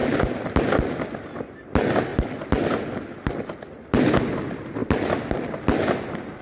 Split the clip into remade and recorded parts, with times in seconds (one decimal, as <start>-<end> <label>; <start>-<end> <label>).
0.0-6.4 recorded